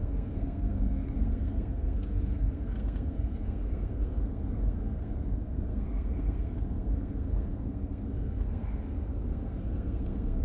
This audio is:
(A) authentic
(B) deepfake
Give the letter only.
B